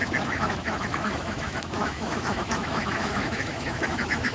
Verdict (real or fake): fake